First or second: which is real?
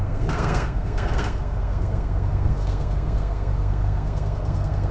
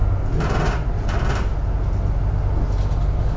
second